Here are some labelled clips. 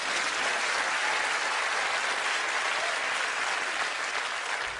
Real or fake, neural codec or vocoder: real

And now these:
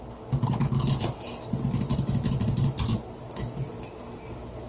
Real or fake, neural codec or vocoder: real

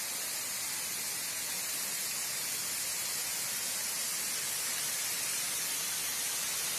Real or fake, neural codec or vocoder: real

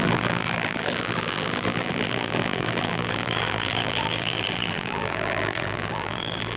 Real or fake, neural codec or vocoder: fake, vocoder, BigVGAN v2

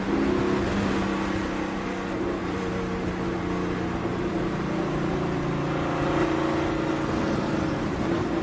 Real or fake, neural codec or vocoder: real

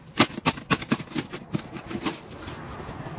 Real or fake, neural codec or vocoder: real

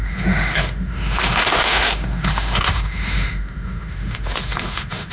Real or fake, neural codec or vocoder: fake, autoencoder, DAC-VAE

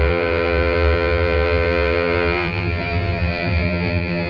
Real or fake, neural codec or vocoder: fake, vocoder, BigVGAN v2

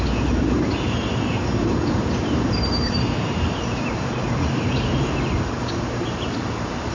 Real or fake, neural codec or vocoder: fake, vocoder, BigVGAN v2